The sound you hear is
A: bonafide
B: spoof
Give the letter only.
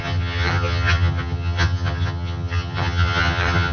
B